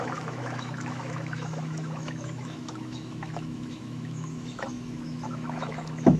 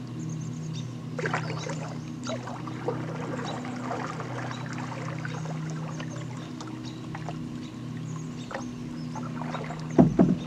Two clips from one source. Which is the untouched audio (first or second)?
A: second